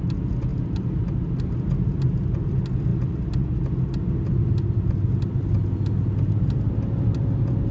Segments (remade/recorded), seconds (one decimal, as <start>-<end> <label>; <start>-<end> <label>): 0.0-7.7 recorded